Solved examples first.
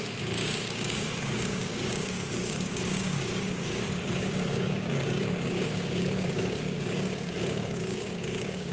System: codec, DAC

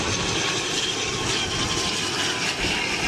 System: none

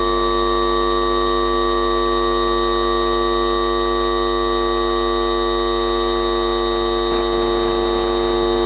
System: none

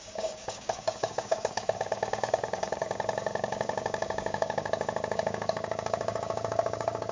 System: codec, DAC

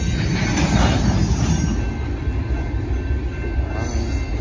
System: none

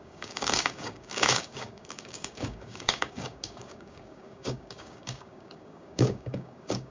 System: codec, DAC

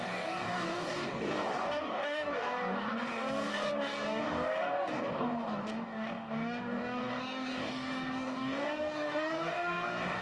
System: codec, DAC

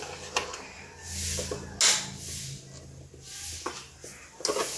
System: none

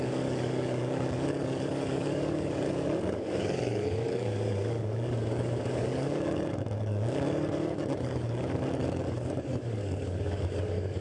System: codec, DAC